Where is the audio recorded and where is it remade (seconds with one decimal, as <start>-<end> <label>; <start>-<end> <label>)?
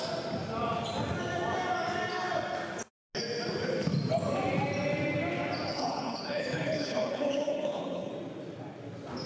0.0-5.7 recorded; 5.7-8.1 remade; 8.1-9.3 recorded